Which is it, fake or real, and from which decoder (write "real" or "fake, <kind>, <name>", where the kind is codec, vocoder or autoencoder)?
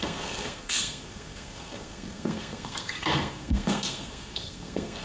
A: fake, codec, SNAC